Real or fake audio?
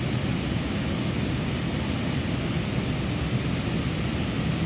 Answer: real